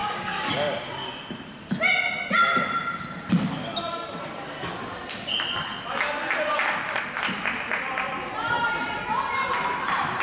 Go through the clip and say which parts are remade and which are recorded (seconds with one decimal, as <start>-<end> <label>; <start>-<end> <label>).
0.0-0.5 remade; 0.5-10.2 recorded